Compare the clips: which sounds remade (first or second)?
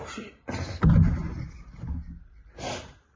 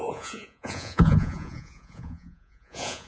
second